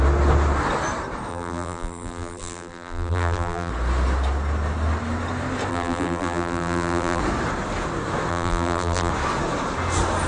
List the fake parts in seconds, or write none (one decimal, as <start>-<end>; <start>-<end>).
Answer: 1.3-3.7; 5.7-7.2; 8.3-9.1